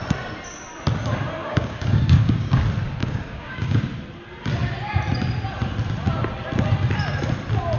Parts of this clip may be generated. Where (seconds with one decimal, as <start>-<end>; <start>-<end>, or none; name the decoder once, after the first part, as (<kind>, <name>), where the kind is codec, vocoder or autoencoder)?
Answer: 1.4-2.6 (codec, DAC); 3.0-3.8